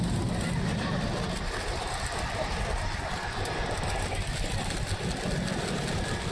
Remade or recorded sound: recorded